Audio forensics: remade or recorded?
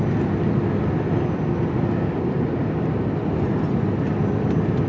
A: recorded